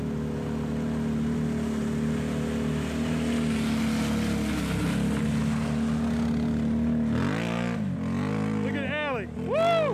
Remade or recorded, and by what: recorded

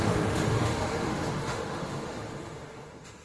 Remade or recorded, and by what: remade, autoencoder, DAC-VAE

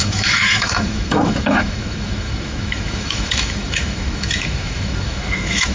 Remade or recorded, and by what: remade, autoencoder, DAC-VAE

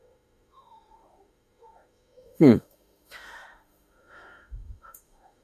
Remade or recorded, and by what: remade, autoencoder, DAC-VAE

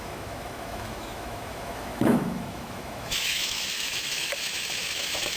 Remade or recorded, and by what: remade, autoencoder, DAC-VAE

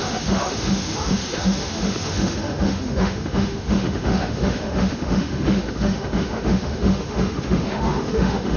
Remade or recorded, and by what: remade, autoencoder, DAC-VAE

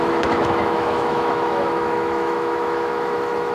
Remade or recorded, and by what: remade, autoencoder, DAC-VAE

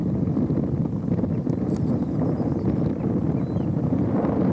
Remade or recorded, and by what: recorded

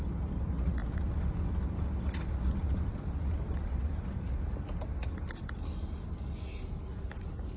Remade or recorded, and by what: recorded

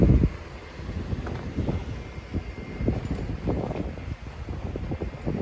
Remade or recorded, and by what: recorded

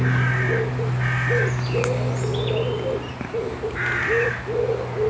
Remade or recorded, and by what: recorded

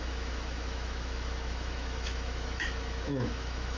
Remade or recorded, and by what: remade, autoencoder, DAC-VAE